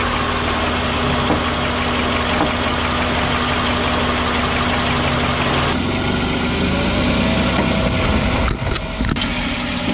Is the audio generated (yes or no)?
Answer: no